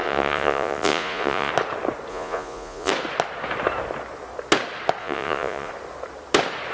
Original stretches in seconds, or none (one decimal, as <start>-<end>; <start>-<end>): 1.5-2.1; 2.9-5.0; 5.7-6.7